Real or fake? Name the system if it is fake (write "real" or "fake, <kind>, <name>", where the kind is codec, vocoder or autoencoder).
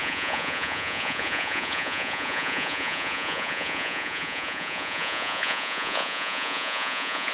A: fake, vocoder, Vocos